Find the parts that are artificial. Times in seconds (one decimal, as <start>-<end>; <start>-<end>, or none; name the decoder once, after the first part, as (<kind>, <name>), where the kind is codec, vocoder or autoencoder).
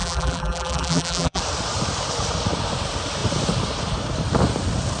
0.0-1.4 (vocoder, BigVGAN v2)